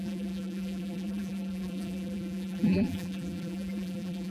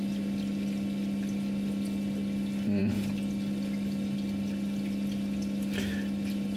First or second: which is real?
second